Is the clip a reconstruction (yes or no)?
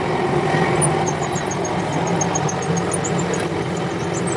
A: no